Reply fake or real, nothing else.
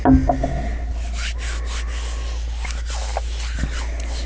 real